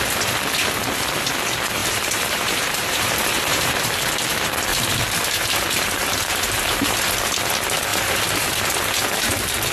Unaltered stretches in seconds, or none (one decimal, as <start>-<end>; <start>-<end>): 0.0-1.8; 3.8-4.7; 7.1-7.9